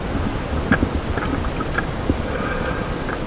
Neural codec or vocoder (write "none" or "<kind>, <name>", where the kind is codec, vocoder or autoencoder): none